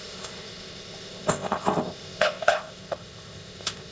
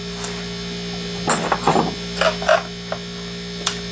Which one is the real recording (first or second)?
second